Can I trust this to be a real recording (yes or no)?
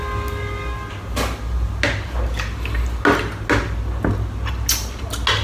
yes